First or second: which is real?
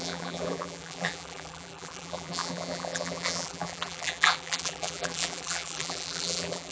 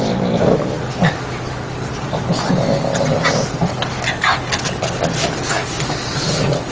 second